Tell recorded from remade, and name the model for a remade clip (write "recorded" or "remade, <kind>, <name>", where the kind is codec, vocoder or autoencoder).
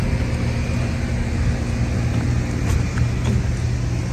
recorded